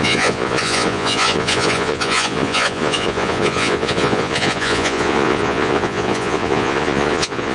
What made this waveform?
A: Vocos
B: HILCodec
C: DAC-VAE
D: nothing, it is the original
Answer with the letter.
A